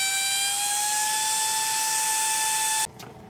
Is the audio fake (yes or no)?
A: no